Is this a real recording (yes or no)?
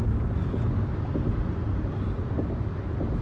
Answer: yes